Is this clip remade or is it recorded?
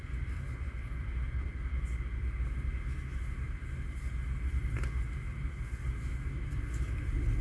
recorded